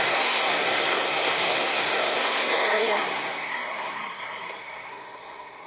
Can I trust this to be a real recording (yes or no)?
no